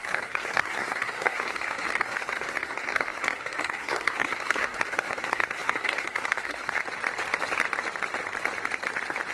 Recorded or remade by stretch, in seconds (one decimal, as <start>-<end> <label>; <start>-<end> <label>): 0.0-6.8 remade; 6.8-9.3 recorded